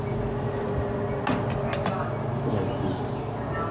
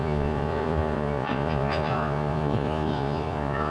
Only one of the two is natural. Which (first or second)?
first